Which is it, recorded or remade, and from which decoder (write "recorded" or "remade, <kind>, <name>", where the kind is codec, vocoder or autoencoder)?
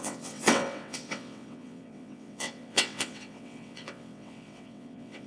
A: remade, vocoder, WaveNeXt